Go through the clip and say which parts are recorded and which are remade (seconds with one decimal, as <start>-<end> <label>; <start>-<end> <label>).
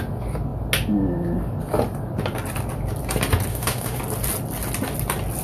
0.0-3.5 recorded; 3.5-4.0 remade; 4.0-5.4 recorded